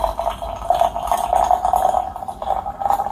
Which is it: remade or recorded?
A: recorded